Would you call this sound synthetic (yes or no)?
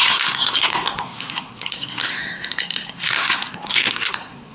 yes